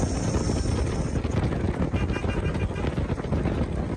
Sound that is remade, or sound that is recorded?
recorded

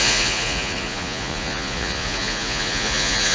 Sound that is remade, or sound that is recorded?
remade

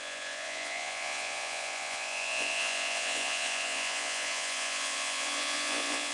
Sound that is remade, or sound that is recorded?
remade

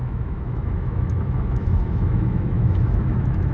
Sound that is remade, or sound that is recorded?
remade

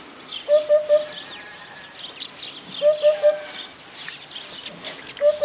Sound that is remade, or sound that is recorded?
recorded